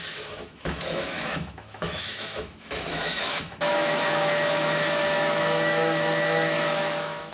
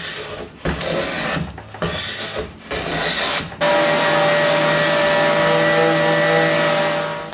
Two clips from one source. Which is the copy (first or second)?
first